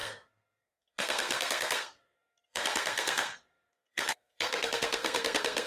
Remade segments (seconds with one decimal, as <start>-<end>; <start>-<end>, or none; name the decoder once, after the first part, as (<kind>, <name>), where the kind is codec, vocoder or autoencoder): 0.0-5.7 (codec, SNAC)